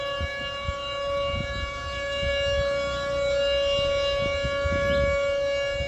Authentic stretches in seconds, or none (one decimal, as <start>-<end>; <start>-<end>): 2.3-5.9